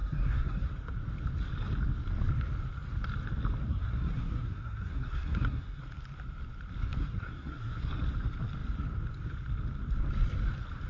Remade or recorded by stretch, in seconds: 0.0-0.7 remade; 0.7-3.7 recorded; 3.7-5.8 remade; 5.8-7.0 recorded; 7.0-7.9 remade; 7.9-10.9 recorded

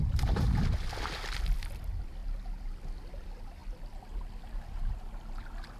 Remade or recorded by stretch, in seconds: 0.0-5.8 recorded

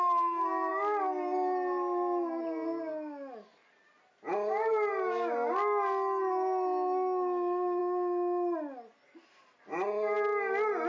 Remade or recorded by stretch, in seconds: 0.0-10.9 recorded

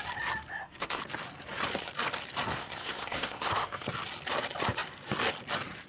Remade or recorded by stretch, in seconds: 0.0-0.5 recorded; 0.5-1.0 remade; 1.0-2.5 recorded; 2.5-3.9 remade; 3.9-5.9 recorded

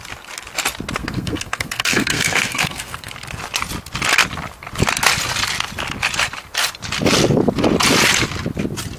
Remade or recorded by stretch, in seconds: 0.0-1.0 recorded; 1.0-3.1 remade; 3.1-9.0 recorded

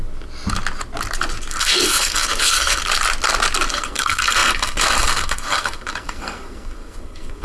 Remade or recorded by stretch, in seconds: 0.0-1.5 recorded; 1.5-2.8 remade; 2.8-3.7 recorded; 3.7-7.4 remade

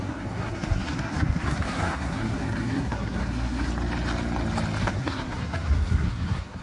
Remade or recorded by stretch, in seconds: 0.0-3.7 remade; 3.7-4.8 recorded; 4.8-6.6 remade

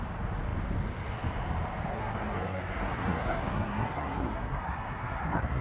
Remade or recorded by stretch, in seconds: 0.0-1.9 recorded; 1.9-5.6 remade